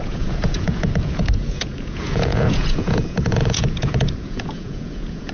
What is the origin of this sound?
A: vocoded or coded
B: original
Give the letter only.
A